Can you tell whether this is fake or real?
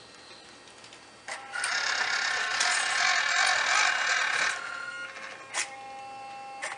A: real